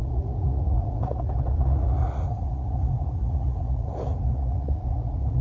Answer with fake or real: fake